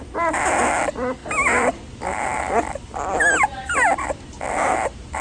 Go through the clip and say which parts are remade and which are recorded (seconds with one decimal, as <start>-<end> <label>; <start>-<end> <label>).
0.0-5.2 recorded